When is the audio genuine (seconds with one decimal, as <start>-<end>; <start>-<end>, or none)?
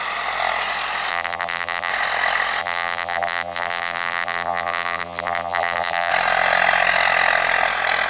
0.0-1.1; 1.9-2.6; 6.1-8.1